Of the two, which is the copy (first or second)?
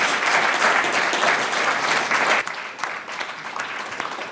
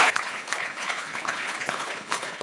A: second